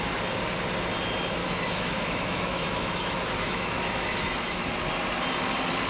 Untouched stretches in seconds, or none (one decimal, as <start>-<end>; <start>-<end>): 0.0-1.4; 4.7-5.9